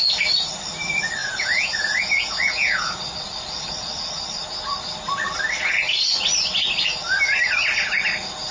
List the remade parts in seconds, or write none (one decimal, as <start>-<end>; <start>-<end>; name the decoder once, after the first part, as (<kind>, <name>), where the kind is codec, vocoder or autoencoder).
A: 1.2-3.0 (vocoder, Vocos)